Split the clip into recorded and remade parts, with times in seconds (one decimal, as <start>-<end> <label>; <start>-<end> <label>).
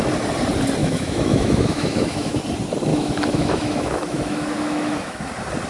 0.0-0.8 recorded; 0.8-2.4 remade; 2.4-2.9 recorded; 2.9-5.2 remade; 5.2-5.7 recorded